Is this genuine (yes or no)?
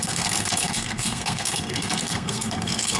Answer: no